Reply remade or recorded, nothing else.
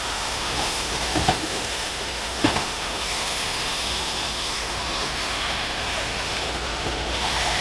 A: remade